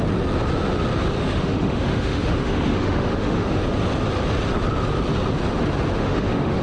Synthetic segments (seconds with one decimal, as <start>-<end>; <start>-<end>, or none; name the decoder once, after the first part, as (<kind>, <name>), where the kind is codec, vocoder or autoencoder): 1.2-3.6 (autoencoder, DAC-VAE); 6.0-6.6